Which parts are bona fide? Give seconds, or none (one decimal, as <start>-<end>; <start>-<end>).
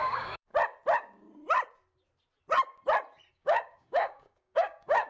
0.5-3.3